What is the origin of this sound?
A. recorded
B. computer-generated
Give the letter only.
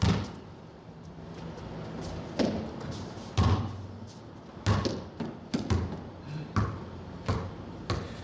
A